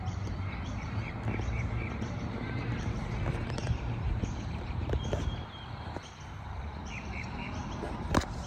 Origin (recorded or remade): remade